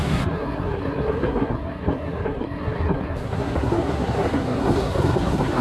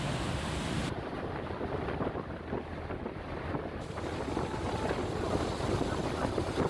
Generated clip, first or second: first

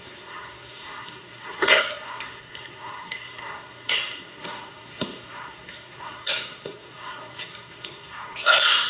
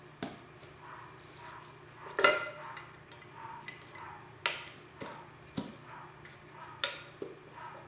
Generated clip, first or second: first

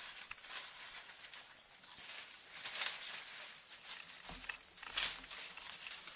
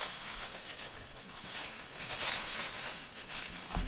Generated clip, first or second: second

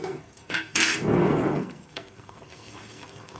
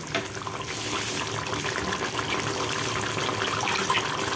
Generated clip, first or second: first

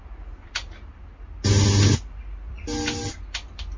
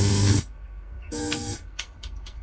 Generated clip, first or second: second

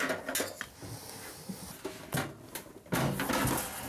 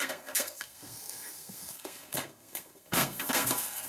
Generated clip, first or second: second